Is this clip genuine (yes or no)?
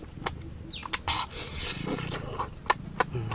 yes